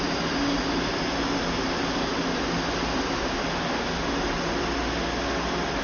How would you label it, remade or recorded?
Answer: recorded